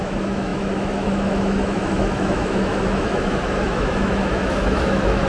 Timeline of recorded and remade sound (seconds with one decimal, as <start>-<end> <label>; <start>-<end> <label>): 0.0-5.3 remade